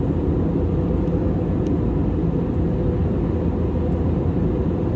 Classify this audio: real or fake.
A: real